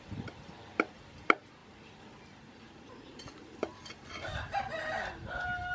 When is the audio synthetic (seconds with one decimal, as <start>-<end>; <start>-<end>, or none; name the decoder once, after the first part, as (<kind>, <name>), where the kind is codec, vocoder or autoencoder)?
none